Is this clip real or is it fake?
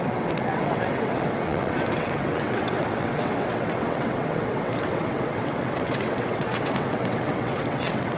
fake